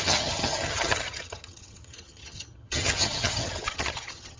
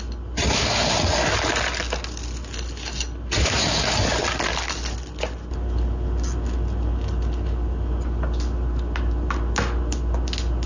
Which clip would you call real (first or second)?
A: second